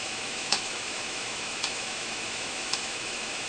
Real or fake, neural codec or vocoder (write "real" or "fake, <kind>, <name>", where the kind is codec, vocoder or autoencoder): fake, autoencoder, DAC-VAE